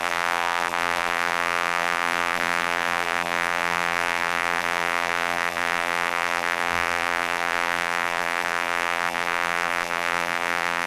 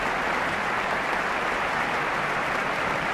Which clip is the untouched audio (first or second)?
second